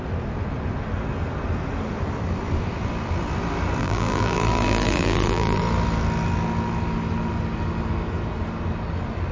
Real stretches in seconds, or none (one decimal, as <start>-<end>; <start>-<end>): 0.0-3.8; 5.6-9.3